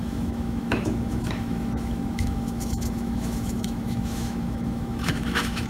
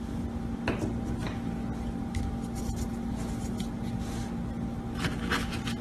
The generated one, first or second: first